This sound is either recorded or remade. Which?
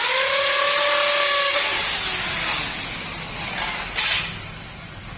recorded